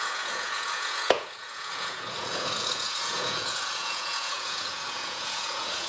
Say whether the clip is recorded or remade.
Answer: remade